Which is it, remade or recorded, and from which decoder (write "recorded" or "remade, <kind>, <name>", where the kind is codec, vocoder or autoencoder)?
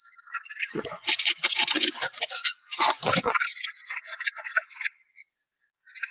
remade, vocoder, Vocos